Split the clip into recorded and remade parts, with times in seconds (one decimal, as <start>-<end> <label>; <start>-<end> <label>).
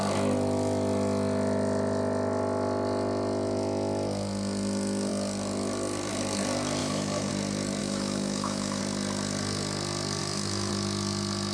0.0-6.8 recorded; 6.8-7.3 remade; 7.3-7.8 recorded; 7.8-8.8 remade; 8.8-10.2 recorded; 10.2-10.7 remade; 10.7-11.5 recorded